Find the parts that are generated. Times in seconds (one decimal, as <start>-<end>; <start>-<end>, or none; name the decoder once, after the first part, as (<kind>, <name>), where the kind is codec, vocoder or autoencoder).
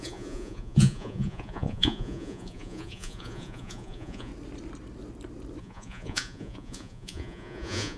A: 0.0-4.3 (vocoder, Vocos); 5.6-8.0